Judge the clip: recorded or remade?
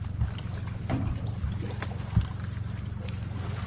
recorded